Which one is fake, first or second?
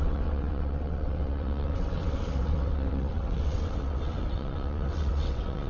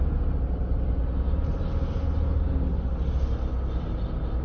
first